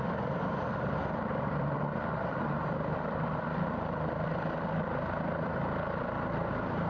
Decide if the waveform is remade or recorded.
remade